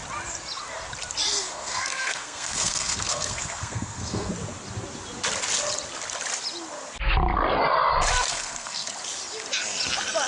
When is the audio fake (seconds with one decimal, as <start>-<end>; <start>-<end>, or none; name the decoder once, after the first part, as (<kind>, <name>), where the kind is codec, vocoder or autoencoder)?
1.3-4.3 (codec, SNAC); 8.3-8.9